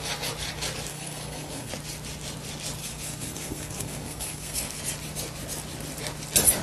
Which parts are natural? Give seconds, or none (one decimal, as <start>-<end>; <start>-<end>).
0.0-0.9; 1.7-2.8; 4.8-6.6